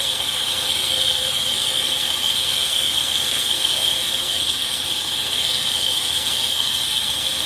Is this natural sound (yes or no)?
no